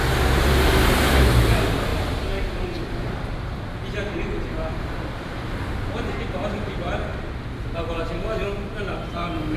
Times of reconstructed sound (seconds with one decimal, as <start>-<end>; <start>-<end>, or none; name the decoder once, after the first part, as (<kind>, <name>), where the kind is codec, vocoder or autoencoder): none